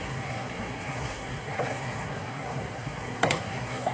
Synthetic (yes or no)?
yes